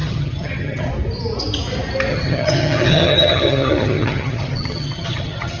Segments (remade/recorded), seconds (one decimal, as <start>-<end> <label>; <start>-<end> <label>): 0.0-0.9 remade; 0.9-2.1 recorded; 2.1-5.6 remade